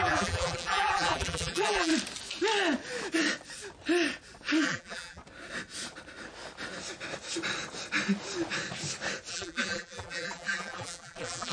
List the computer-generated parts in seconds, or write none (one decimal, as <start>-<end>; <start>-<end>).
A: 0.0-1.9; 4.6-5.2; 9.3-11.5